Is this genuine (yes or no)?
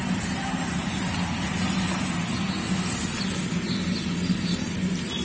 yes